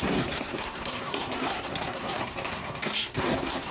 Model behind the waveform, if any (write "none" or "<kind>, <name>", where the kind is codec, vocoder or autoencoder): codec, SNAC